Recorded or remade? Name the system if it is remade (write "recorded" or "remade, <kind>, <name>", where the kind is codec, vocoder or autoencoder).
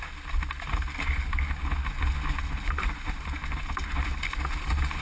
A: recorded